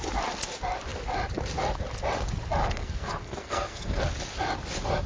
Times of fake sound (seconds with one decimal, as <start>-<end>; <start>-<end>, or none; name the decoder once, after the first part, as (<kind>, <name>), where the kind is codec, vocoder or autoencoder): 2.6-4.0 (codec, SNAC)